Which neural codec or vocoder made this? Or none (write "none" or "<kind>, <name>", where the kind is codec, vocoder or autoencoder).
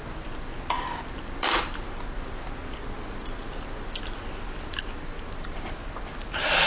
none